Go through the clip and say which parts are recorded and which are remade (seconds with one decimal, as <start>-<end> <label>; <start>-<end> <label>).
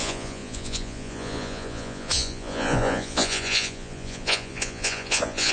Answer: 0.0-5.5 remade